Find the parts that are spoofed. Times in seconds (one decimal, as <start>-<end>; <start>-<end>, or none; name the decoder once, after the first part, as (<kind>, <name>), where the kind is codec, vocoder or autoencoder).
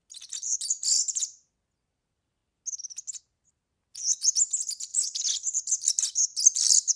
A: none